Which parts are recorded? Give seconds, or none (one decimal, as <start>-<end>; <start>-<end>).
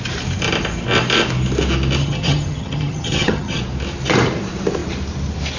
0.0-2.0; 3.6-5.6